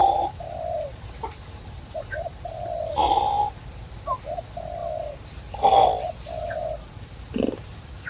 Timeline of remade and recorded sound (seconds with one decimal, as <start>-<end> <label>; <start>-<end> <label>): 0.0-3.4 remade; 3.4-8.1 recorded